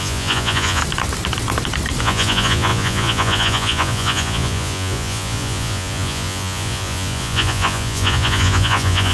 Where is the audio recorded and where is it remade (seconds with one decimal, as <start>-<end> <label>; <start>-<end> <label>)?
0.0-0.8 remade; 0.8-2.0 recorded; 2.0-9.1 remade